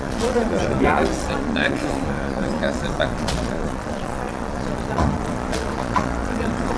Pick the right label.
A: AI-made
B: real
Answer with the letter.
A